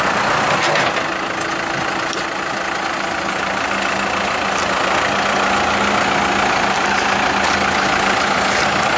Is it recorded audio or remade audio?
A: recorded